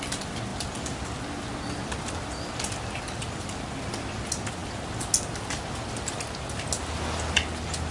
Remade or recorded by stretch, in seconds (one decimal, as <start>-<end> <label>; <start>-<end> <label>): 0.0-7.9 recorded